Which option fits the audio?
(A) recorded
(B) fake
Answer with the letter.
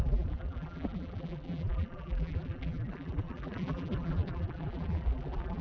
B